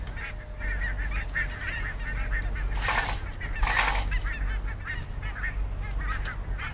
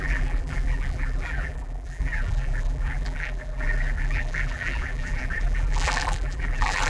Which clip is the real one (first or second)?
first